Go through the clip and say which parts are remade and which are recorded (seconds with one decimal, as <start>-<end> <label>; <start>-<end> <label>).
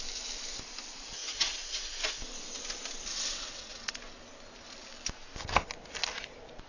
0.0-3.1 recorded; 3.1-3.9 remade; 3.9-6.7 recorded